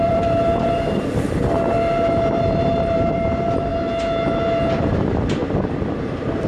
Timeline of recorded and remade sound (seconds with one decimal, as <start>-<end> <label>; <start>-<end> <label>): 0.0-3.7 remade; 3.7-4.8 recorded; 4.8-5.4 remade; 5.4-6.0 recorded; 6.0-6.5 remade